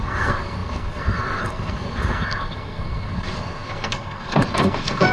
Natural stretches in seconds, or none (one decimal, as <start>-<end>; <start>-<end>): none